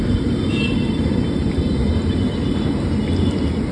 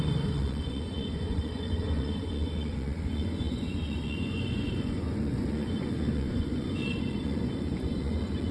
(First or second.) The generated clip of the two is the second